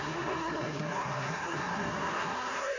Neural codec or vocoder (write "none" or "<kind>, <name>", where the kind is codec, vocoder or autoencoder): codec, SNAC